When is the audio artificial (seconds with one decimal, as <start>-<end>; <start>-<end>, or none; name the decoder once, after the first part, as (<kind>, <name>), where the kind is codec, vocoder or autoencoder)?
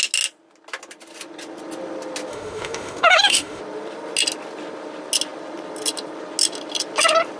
2.3-3.6 (autoencoder, DAC-VAE)